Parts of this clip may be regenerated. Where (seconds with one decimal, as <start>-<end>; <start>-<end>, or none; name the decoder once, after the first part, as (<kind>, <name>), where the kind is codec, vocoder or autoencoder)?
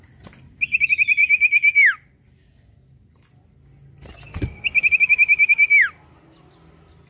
none